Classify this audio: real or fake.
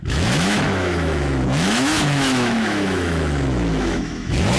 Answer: fake